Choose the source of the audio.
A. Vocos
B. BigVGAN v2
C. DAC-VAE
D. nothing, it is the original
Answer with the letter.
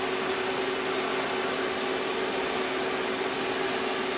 D